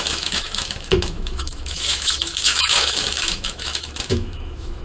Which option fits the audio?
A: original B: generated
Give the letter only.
B